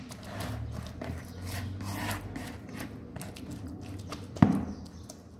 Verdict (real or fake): real